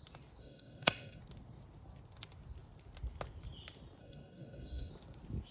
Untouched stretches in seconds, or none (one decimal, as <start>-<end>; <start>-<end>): 0.0-0.4; 1.2-4.0; 4.9-5.5